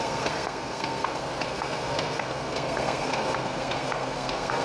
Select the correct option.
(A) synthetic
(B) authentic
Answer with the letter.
A